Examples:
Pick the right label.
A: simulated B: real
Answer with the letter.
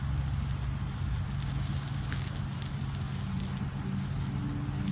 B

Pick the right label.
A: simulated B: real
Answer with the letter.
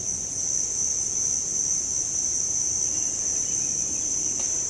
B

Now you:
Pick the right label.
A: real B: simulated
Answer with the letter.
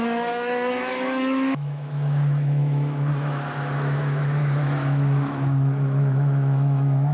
B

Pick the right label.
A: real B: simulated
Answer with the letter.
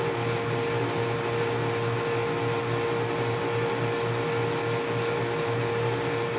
A